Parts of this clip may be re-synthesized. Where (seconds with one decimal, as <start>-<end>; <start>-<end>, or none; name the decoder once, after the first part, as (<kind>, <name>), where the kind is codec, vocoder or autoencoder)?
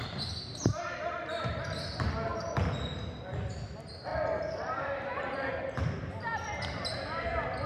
0.7-1.7 (vocoder, BigVGAN v2); 4.1-5.5